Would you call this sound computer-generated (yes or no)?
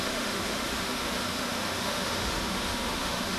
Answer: yes